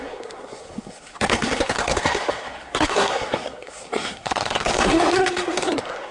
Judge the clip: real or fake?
fake